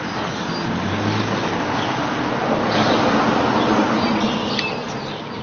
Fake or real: real